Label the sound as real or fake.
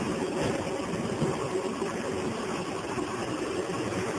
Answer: fake